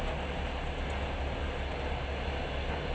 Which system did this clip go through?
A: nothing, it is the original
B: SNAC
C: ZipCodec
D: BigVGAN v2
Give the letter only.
A